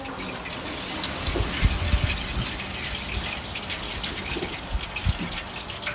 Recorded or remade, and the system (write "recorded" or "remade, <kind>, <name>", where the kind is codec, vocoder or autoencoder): recorded